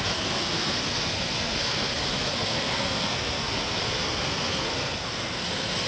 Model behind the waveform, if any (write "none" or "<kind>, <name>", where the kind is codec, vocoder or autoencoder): codec, SNAC